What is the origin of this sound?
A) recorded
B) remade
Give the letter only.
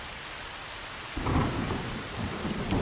A